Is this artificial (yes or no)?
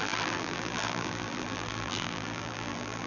yes